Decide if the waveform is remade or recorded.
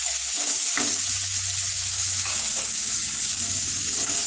remade